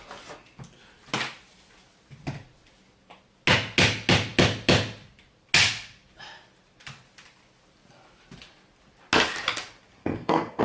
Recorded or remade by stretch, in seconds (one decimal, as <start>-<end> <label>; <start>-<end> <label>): 0.0-10.0 recorded; 10.0-10.6 remade